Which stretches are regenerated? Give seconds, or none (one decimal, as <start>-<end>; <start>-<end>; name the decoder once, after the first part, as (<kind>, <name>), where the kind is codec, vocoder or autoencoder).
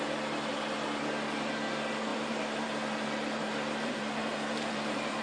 0.5-1.0 (vocoder, BigVGAN v2); 2.1-5.2